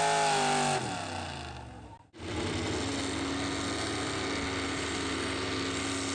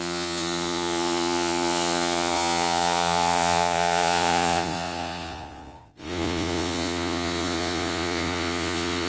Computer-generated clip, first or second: second